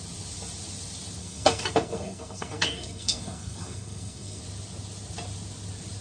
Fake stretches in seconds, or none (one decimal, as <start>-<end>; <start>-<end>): 1.2-4.4

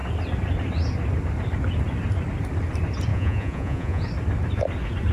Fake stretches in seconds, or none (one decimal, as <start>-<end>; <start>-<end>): 3.1-4.0

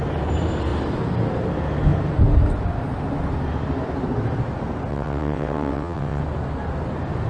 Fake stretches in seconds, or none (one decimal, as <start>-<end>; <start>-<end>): 4.9-6.2